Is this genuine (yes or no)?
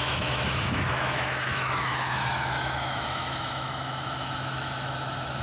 no